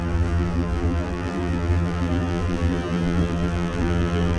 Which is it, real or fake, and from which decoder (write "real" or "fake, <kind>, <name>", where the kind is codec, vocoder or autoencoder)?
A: fake, vocoder, BigVGAN v2